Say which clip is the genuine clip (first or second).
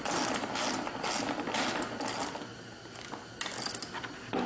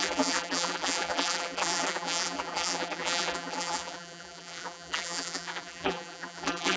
first